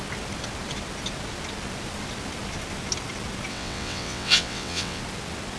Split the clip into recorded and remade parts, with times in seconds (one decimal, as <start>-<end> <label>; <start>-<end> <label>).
0.0-3.5 recorded; 3.5-5.0 remade; 5.0-5.6 recorded